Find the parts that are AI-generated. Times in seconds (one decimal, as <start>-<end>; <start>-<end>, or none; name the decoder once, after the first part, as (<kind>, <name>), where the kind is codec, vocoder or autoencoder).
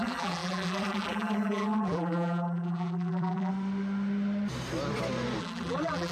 0.0-3.5 (vocoder, BigVGAN v2); 5.4-6.1